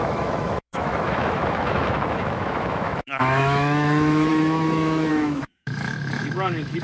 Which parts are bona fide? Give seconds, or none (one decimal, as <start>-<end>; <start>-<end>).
none

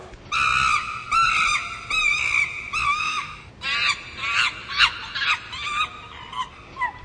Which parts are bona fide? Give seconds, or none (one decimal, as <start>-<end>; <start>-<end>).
0.0-2.9; 3.5-7.0

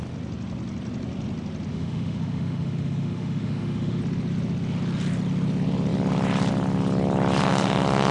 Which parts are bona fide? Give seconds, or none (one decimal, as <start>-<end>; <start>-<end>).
0.0-1.7; 4.0-7.4